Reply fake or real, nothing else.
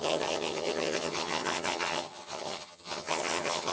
fake